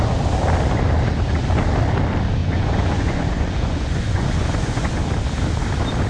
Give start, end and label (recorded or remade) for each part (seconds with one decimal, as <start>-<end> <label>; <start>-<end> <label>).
0.0-2.4 recorded; 2.4-4.9 remade; 4.9-6.1 recorded